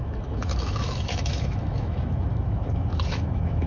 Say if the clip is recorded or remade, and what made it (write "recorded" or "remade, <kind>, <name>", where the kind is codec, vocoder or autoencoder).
remade, autoencoder, DAC-VAE